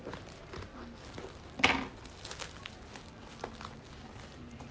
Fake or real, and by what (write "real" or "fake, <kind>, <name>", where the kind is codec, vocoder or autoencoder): real